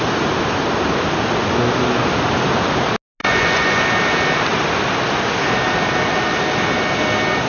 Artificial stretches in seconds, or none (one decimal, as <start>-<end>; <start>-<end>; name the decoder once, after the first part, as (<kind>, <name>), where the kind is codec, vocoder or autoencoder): 3.2-3.8 (vocoder, Vocos)